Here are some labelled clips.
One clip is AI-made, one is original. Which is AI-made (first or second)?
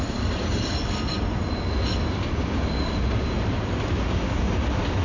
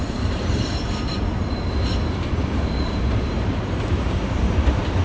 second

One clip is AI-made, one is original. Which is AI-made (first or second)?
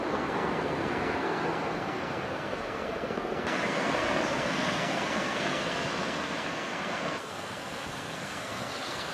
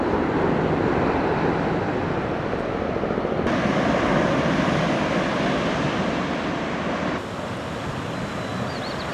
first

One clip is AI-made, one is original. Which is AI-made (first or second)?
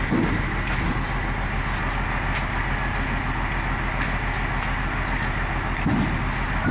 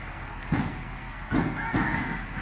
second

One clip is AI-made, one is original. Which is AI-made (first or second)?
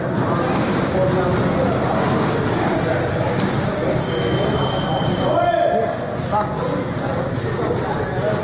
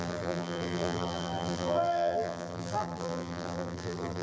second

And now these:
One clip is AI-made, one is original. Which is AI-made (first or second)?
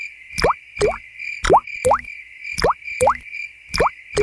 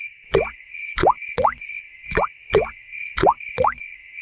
second